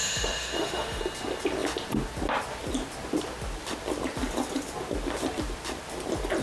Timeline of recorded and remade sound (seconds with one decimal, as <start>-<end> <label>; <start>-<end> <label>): 0.0-1.0 remade; 1.0-6.4 recorded